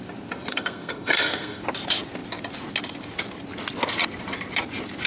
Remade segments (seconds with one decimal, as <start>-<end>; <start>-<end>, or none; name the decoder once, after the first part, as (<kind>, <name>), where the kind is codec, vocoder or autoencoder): 0.5-1.6 (codec, SNAC)